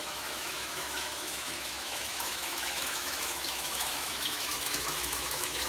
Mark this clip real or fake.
fake